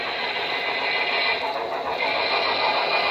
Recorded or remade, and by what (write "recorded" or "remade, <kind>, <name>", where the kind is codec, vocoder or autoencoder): recorded